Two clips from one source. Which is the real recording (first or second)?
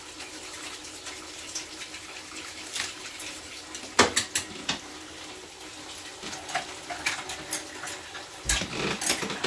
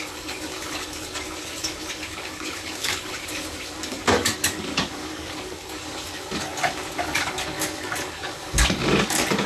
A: first